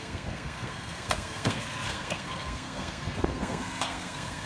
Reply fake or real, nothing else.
fake